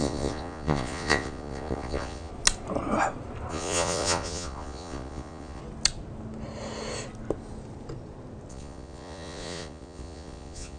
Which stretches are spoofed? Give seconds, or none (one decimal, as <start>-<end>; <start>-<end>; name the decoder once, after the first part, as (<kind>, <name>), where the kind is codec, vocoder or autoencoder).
0.0-2.3 (vocoder, Vocos); 3.5-5.6; 8.5-10.8